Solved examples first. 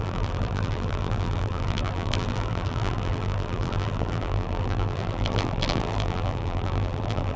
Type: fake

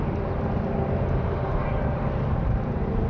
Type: fake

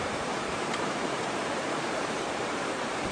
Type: fake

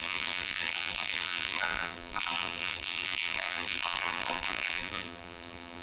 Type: fake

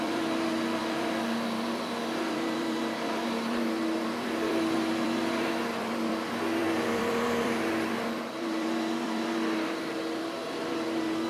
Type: fake